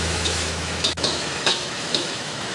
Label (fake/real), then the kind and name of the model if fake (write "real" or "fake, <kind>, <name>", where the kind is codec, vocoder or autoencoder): fake, autoencoder, DAC-VAE